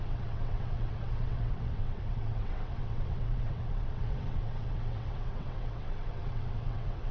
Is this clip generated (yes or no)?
yes